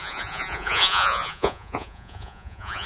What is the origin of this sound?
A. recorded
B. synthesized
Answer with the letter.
B